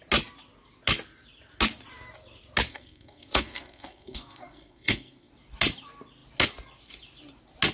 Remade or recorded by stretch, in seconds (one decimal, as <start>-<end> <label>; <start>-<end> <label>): 0.0-2.7 recorded; 2.7-5.3 remade; 5.3-7.7 recorded